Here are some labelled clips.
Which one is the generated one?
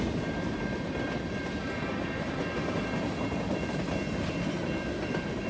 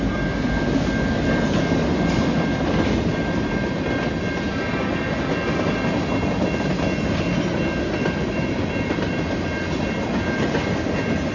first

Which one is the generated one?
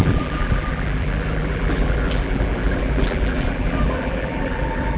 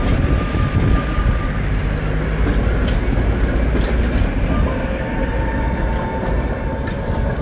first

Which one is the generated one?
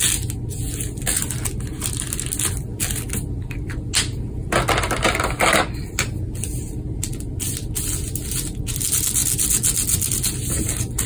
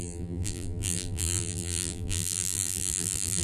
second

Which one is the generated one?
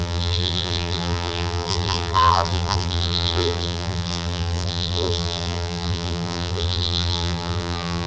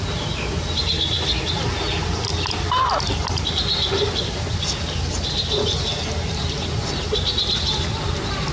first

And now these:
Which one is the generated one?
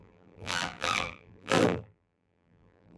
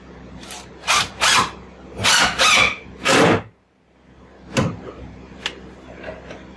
first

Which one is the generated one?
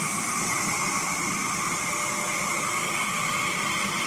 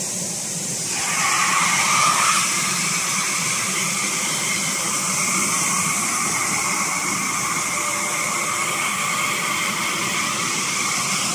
second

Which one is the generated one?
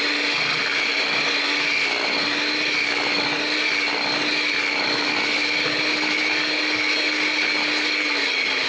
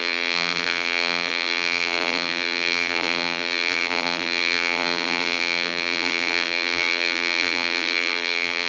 second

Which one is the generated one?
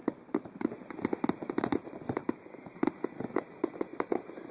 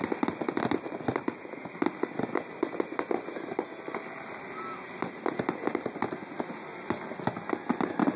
first